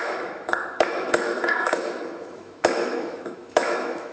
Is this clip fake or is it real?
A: fake